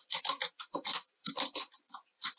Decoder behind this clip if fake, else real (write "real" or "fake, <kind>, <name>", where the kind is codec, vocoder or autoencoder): real